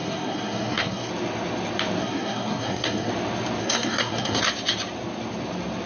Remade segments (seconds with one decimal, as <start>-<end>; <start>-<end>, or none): 0.0-1.1; 2.0-3.1; 3.6-4.4